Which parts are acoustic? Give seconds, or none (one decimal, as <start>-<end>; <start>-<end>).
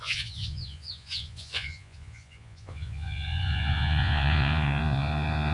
none